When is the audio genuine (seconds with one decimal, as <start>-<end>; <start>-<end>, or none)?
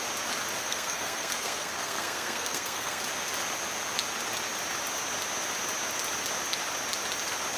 0.0-0.6; 3.0-7.6